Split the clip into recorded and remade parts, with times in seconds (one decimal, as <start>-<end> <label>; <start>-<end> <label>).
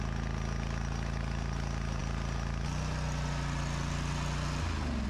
0.0-5.1 recorded